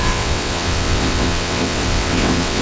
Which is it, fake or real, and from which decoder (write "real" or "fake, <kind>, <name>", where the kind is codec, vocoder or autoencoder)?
fake, vocoder, WaveNeXt